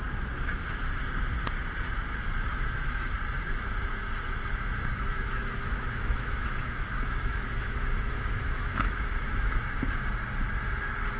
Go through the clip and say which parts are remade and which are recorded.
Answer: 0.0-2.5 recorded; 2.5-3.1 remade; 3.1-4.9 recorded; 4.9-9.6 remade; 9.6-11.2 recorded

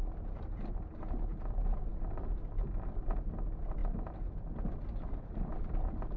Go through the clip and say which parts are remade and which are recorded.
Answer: 0.0-6.2 recorded

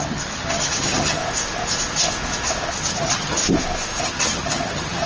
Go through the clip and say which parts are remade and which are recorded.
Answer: 0.0-1.2 remade; 1.2-2.7 recorded; 2.7-3.4 remade; 3.4-4.0 recorded; 4.0-5.1 remade

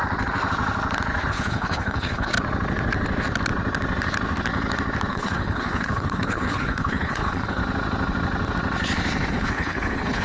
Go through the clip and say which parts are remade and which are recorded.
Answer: 0.0-1.3 recorded; 1.3-2.3 remade; 2.3-5.1 recorded; 5.1-7.6 remade; 7.6-9.3 recorded; 9.3-10.2 remade

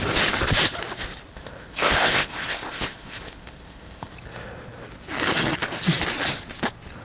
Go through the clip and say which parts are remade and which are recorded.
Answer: 0.0-1.3 recorded; 1.3-4.1 remade; 4.1-7.0 recorded

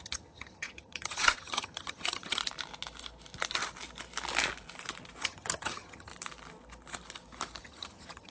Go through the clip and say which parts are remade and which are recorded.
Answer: 0.0-2.4 remade; 2.4-5.2 recorded; 5.2-6.1 remade; 6.1-7.6 recorded; 7.6-8.3 remade

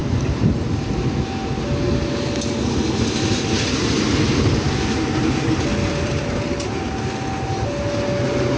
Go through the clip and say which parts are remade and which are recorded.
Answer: 0.0-5.7 recorded; 5.7-6.9 remade; 6.9-8.6 recorded

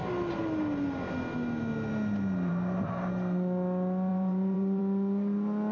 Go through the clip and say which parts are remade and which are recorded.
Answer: 0.0-4.1 recorded; 4.1-4.8 remade; 4.8-5.7 recorded